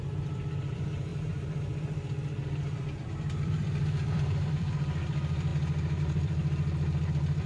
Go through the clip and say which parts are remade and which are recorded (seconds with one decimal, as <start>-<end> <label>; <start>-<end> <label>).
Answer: 0.0-5.5 remade; 5.5-6.0 recorded; 6.0-6.4 remade; 6.4-7.0 recorded; 7.0-7.5 remade

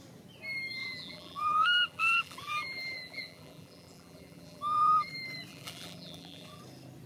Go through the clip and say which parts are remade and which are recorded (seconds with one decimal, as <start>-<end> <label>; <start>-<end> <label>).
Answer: 0.0-0.8 recorded; 0.8-5.1 remade; 5.1-5.5 recorded; 5.5-6.6 remade; 6.6-7.1 recorded

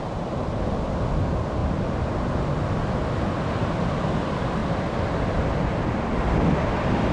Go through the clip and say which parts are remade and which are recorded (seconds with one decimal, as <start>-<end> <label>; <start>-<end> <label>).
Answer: 0.0-1.6 recorded; 1.6-2.2 remade; 2.2-4.6 recorded; 4.6-5.3 remade; 5.3-7.1 recorded

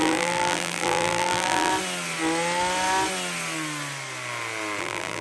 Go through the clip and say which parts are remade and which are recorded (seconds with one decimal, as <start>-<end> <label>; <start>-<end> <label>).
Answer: 0.0-1.7 remade; 1.7-4.8 recorded; 4.8-5.2 remade